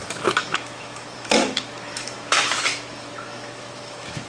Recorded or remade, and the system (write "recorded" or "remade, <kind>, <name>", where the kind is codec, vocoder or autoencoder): remade, autoencoder, DAC-VAE